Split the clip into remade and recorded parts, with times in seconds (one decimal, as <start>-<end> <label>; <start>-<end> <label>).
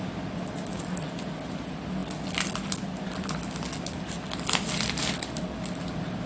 0.0-6.3 recorded